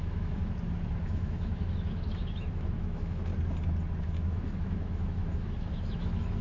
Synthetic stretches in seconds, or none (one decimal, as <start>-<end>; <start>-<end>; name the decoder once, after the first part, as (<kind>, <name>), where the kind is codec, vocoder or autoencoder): 0.0-0.4 (autoencoder, DAC-VAE); 1.0-3.3; 4.0-6.4